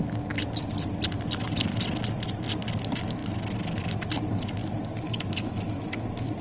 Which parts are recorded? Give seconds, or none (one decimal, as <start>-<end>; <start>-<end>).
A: 0.0-6.4